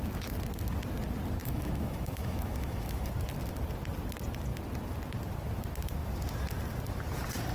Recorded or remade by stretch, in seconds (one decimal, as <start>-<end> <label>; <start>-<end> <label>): 0.0-1.4 recorded; 1.4-3.1 remade; 3.1-7.5 recorded